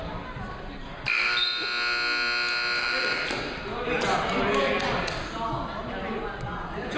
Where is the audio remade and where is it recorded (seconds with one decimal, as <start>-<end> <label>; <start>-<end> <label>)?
0.0-2.8 recorded; 2.8-4.4 remade; 4.4-7.0 recorded